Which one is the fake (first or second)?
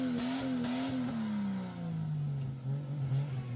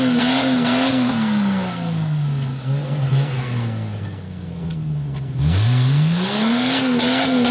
second